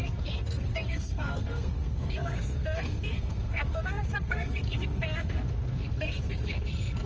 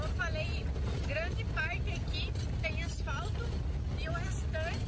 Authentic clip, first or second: second